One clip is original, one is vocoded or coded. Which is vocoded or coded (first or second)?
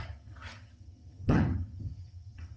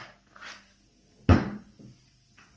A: first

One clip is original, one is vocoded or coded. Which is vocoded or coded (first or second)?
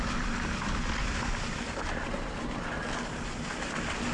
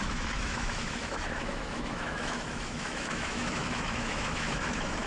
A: second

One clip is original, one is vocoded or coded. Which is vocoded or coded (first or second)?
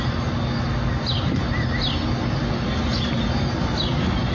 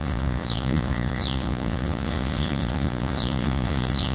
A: second